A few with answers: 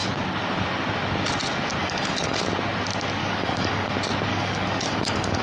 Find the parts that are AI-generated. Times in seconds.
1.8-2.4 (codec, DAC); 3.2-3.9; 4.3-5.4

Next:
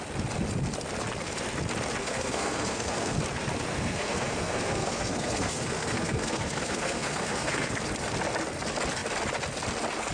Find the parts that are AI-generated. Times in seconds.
2.0-3.2 (codec, SNAC); 3.7-7.7

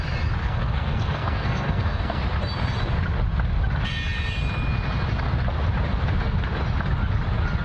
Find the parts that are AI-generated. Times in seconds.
0.4-2.2 (codec, SNAC)

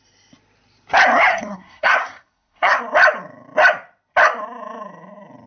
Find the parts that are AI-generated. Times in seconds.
1.3-2.8 (codec, SNAC)